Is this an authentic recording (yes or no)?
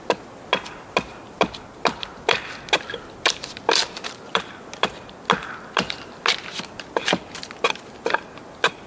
yes